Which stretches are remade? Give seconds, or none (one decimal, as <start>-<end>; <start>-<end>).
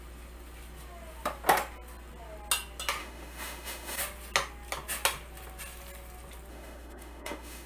3.0-4.0; 6.5-7.7